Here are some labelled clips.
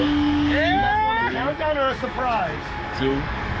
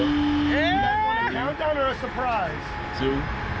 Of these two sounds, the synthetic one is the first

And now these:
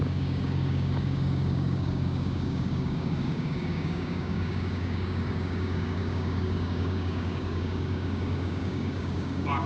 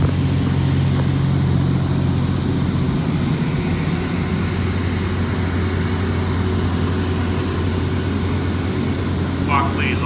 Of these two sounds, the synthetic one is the first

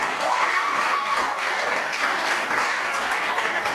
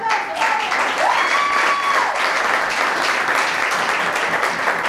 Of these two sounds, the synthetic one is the first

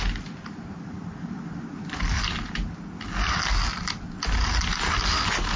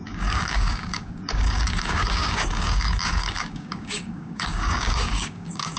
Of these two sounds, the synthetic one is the second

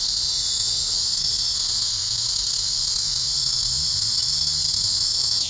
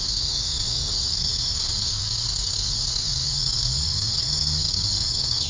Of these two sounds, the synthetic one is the second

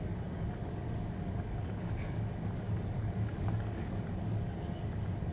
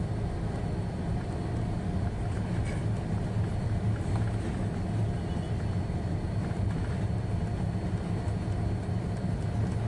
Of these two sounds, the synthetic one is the first